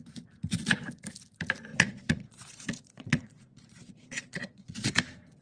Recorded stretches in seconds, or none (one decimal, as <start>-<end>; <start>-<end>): 0.0-1.7; 4.9-5.4